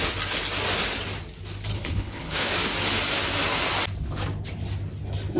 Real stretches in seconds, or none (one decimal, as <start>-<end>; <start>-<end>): 0.0-1.7; 2.5-5.4